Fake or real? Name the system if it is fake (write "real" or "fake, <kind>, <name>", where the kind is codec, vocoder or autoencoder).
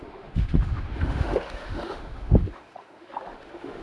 fake, autoencoder, DAC-VAE